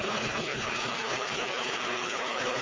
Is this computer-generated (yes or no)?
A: yes